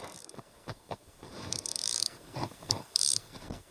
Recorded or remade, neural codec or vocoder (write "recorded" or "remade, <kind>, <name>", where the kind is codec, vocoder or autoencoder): remade, codec, SNAC